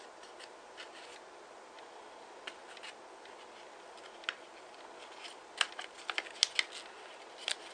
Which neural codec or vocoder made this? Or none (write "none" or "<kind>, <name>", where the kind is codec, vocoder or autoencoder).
none